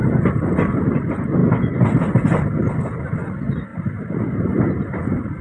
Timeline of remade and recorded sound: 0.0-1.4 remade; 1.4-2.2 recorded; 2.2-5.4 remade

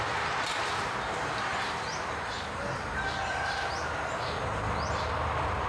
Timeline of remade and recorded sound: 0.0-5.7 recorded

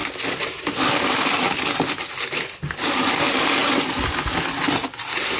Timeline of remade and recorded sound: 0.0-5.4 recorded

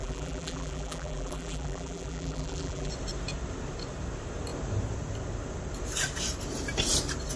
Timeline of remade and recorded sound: 0.0-2.9 remade; 2.9-7.4 recorded

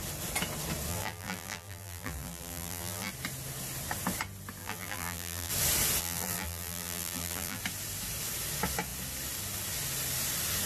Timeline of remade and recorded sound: 0.0-0.9 recorded; 0.9-3.1 remade; 3.1-4.6 recorded; 4.6-5.5 remade; 5.5-6.0 recorded; 6.0-7.6 remade; 7.6-10.7 recorded

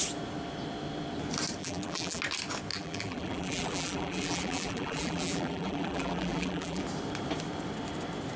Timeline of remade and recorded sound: 0.0-1.6 recorded; 1.6-2.2 remade; 2.2-2.7 recorded; 2.7-6.8 remade; 6.8-8.4 recorded